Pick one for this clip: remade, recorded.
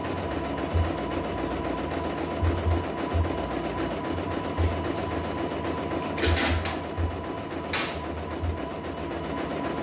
recorded